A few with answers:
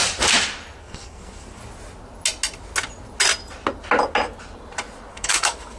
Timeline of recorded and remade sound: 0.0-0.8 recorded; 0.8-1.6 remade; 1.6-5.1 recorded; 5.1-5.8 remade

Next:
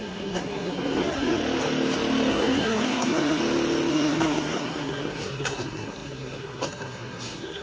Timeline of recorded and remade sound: 0.0-1.4 remade; 1.4-2.3 recorded; 2.3-3.4 remade; 3.4-3.9 recorded; 3.9-7.6 remade

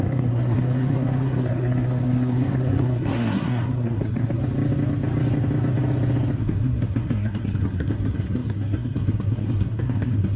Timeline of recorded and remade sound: 0.0-4.4 remade; 4.4-6.4 recorded; 6.4-10.4 remade